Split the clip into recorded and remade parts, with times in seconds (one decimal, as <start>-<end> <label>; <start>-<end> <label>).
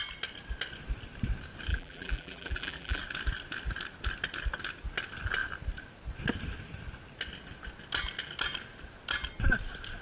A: 0.0-1.7 recorded; 1.7-3.0 remade; 3.0-10.0 recorded